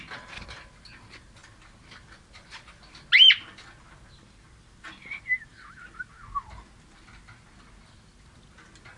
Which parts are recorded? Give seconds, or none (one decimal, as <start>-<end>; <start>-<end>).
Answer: 0.0-9.0

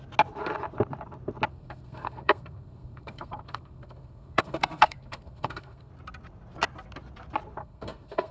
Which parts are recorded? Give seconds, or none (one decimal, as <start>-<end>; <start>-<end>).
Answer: 0.0-1.5; 5.9-7.6